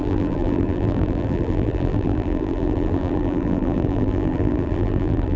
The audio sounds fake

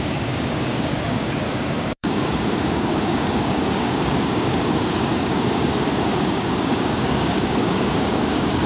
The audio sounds fake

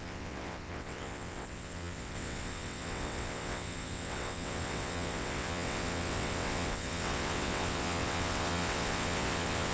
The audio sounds fake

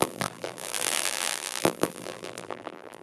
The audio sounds fake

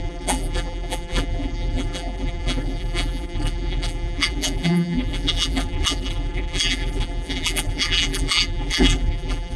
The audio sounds fake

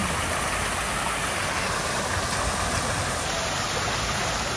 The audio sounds real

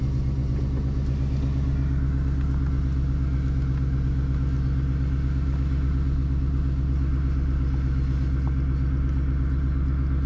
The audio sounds real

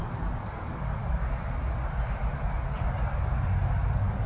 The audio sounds real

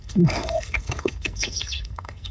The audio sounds fake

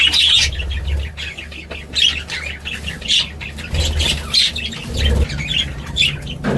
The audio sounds real